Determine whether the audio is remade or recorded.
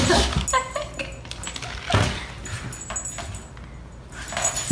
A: recorded